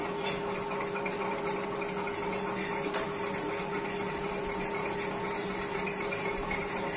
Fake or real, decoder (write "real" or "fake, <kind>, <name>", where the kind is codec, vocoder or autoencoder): real